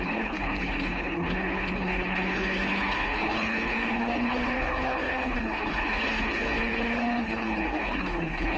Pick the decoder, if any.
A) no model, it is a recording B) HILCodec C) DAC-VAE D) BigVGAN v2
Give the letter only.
B